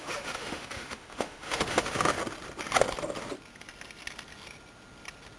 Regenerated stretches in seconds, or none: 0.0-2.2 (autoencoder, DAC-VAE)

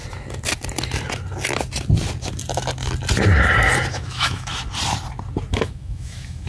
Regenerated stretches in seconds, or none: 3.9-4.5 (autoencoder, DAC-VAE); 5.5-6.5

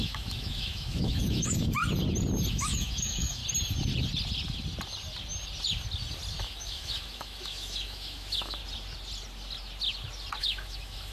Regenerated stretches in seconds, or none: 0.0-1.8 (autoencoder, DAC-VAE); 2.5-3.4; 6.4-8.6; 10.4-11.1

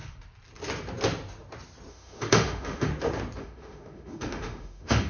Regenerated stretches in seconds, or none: 1.9-2.9 (autoencoder, DAC-VAE); 3.4-5.1